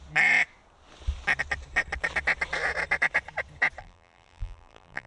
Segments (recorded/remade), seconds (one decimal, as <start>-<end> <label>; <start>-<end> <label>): 0.0-3.8 recorded; 3.8-5.1 remade